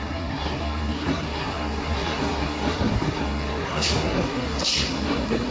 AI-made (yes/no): yes